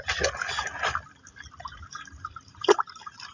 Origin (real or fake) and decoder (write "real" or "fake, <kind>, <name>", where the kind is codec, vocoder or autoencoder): real